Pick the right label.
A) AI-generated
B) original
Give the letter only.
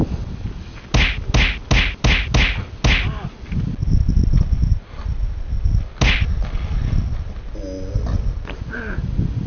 B